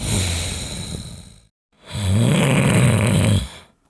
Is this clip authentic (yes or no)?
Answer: yes